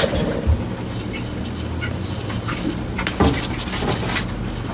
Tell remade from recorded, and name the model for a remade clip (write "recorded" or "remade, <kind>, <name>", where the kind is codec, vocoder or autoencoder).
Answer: recorded